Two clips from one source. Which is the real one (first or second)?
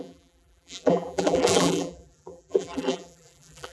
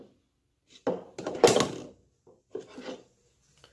second